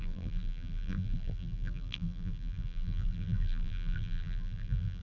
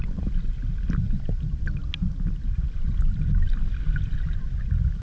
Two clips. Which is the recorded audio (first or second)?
second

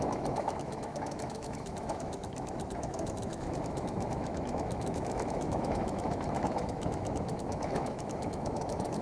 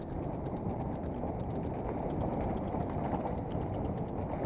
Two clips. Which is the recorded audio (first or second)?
second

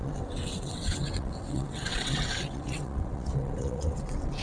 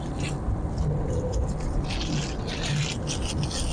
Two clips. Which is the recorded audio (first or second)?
second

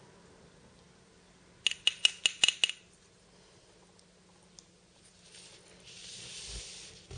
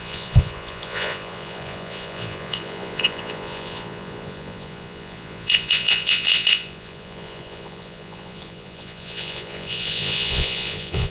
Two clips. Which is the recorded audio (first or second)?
first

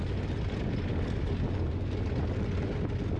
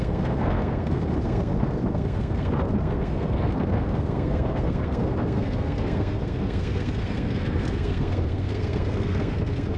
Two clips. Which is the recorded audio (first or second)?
first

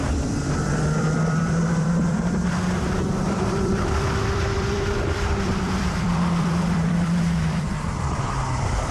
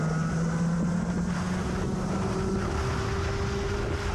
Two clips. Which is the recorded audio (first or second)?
second